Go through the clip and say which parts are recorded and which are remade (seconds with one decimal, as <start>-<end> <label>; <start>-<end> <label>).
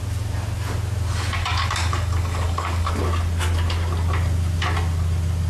0.0-1.4 recorded; 1.4-2.9 remade; 2.9-5.5 recorded